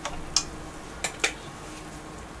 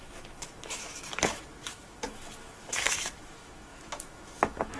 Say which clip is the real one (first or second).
first